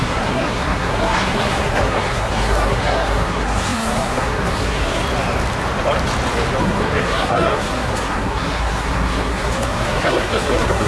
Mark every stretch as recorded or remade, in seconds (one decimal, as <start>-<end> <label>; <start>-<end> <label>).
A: 0.0-5.0 remade; 5.0-6.6 recorded; 6.6-10.9 remade